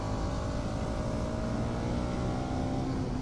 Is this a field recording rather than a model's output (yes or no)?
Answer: yes